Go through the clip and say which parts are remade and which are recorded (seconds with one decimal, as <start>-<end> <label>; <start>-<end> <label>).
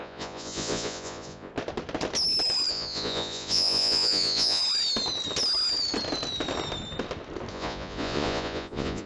0.0-1.5 remade; 1.5-2.7 recorded; 2.7-4.6 remade; 4.6-7.5 recorded; 7.5-9.1 remade